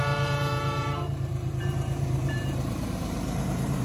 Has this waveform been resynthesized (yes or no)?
yes